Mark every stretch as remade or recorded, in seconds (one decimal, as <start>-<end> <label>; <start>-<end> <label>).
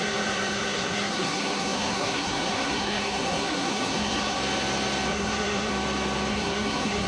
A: 0.0-4.4 remade; 4.4-5.1 recorded; 5.1-5.7 remade; 5.7-6.3 recorded; 6.3-7.1 remade